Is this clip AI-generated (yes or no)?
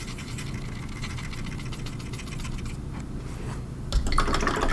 no